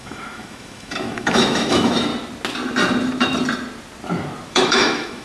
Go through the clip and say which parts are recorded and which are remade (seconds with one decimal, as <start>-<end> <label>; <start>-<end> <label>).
0.0-2.1 remade; 2.1-4.5 recorded; 4.5-5.2 remade